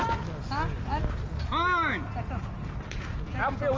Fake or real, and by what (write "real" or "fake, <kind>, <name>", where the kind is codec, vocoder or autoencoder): real